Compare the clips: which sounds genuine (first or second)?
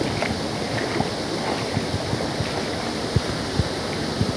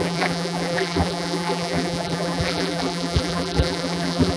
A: first